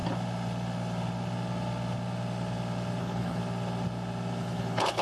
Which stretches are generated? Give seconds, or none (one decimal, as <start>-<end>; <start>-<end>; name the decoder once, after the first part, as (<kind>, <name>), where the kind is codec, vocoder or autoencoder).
3.0-3.4 (codec, HILCodec); 4.4-5.0